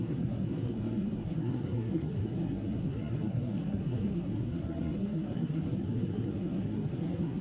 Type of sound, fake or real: fake